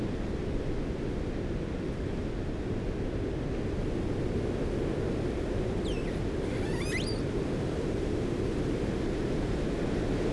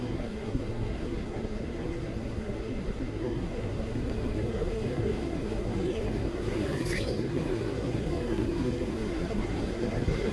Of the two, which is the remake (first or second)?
second